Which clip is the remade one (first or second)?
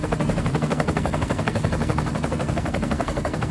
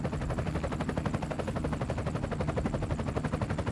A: first